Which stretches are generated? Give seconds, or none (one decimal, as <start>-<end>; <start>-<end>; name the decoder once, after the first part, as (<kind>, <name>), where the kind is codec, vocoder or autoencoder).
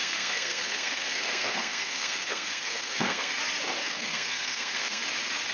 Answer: 0.0-3.3 (codec, SNAC); 3.8-5.0